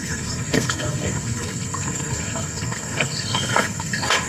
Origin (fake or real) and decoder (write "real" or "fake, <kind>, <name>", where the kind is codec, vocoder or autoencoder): fake, codec, SNAC